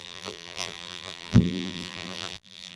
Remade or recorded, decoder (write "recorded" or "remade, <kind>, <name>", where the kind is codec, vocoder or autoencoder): remade, vocoder, BigVGAN v2